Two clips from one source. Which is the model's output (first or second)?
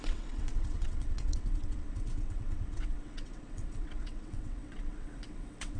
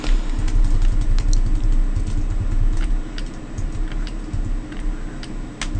first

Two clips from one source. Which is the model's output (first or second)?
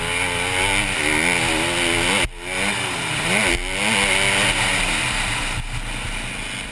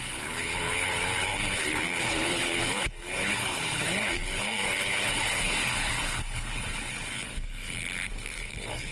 second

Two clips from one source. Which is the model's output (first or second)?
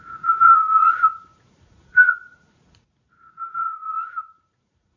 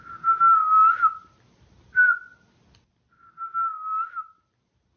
first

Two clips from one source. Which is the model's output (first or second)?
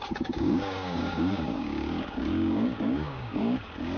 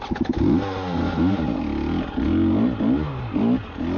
first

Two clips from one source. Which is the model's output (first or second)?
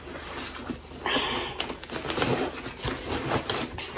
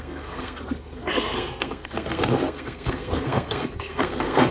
second